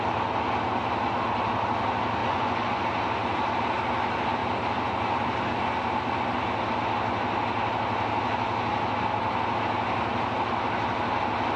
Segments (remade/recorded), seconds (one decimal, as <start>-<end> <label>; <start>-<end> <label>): 0.0-2.2 recorded; 2.2-2.8 remade; 2.8-11.6 recorded